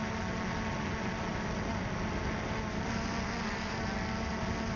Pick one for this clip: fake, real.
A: real